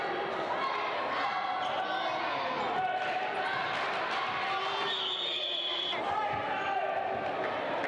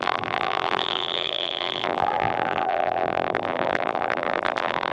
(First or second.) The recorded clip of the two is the first